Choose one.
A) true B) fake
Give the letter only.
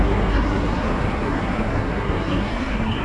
B